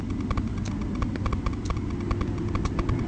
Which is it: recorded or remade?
recorded